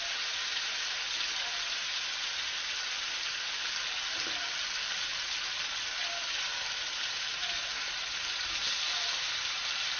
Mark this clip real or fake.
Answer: real